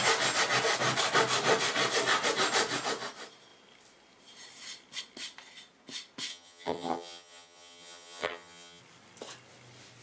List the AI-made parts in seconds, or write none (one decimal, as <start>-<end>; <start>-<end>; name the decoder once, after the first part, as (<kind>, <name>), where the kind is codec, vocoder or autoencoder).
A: 6.3-8.8 (vocoder, HiFi-GAN)

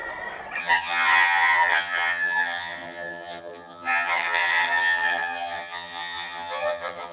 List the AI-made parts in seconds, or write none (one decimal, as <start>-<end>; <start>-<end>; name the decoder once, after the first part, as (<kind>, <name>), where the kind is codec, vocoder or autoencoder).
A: 0.6-7.1 (vocoder, HiFi-GAN)

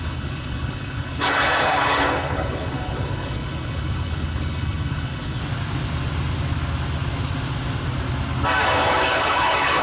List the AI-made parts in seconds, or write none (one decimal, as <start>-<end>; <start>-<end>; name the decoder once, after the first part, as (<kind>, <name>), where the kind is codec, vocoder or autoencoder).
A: 0.0-5.4 (codec, HILCodec); 8.6-9.8

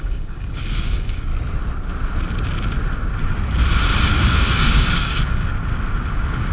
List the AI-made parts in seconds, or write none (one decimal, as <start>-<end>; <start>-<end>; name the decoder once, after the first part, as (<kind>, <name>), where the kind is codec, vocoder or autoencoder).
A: 0.0-1.3 (codec, DAC); 4.0-5.5; 6.1-6.5